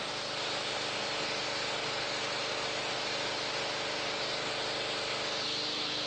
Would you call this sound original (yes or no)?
yes